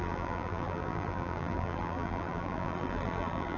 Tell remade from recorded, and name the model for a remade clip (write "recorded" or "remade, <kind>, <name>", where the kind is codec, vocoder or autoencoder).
remade, vocoder, BigVGAN v2